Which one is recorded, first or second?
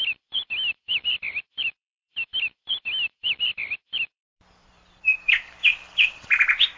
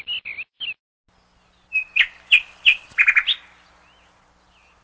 second